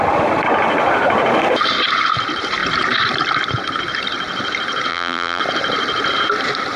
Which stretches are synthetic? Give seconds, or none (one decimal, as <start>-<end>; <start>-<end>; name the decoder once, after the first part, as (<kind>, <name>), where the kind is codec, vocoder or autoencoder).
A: 4.9-5.4 (vocoder, BigVGAN v2)